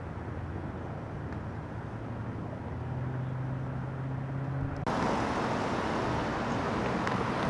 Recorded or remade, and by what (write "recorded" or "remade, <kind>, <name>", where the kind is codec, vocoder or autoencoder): recorded